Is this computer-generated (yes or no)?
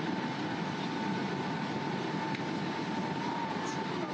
no